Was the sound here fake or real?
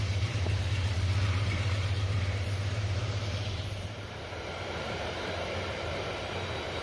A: fake